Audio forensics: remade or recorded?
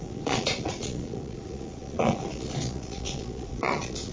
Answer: remade